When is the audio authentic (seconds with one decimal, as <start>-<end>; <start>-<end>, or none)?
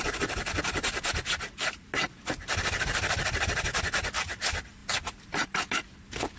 0.0-6.4